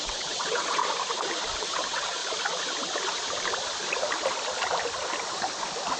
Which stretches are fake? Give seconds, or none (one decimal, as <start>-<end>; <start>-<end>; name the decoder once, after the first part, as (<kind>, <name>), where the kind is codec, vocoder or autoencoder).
0.0-0.8 (vocoder, WaveNeXt); 1.6-2.2